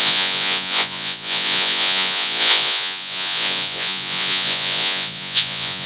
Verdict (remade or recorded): remade